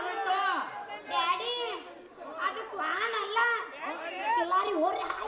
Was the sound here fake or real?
real